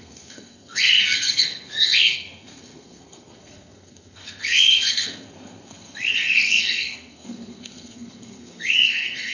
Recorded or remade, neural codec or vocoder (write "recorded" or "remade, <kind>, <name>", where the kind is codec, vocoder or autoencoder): remade, codec, SNAC